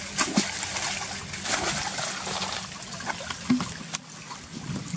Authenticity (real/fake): real